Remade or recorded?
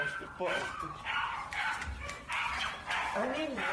remade